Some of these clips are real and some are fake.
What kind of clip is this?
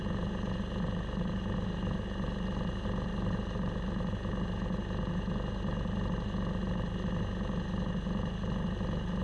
real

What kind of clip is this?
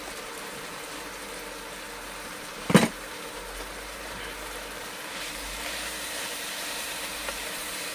fake